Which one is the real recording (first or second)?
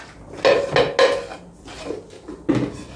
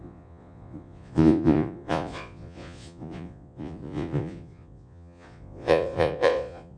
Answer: first